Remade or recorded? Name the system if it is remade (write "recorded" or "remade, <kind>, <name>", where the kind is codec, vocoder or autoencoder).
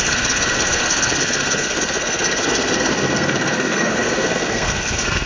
remade, codec, SNAC